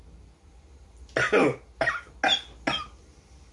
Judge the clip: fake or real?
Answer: real